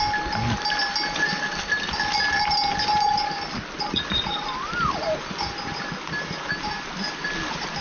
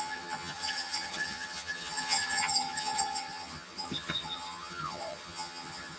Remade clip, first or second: second